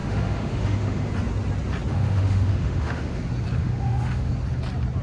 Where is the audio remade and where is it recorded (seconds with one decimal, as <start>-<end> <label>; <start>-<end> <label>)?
0.0-1.1 remade; 1.1-1.9 recorded; 1.9-3.2 remade; 3.2-3.6 recorded; 3.6-4.3 remade; 4.3-5.0 recorded